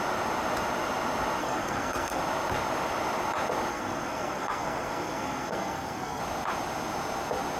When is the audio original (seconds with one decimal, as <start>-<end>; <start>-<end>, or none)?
0.0-1.4; 2.2-3.7; 6.2-7.6